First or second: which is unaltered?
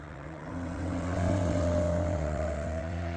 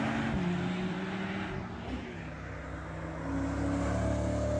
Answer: second